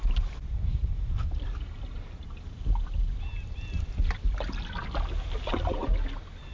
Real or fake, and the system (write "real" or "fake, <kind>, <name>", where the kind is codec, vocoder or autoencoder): real